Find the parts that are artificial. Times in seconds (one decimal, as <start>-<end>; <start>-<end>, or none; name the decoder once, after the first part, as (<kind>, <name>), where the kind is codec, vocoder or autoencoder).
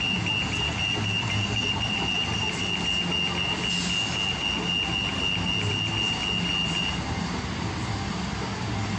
none